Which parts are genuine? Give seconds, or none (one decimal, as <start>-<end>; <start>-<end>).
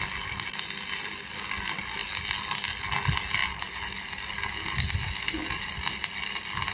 0.0-6.7